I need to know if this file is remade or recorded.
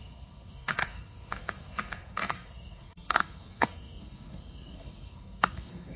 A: remade